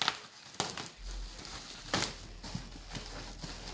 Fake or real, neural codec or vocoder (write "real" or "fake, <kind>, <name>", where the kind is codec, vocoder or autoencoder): real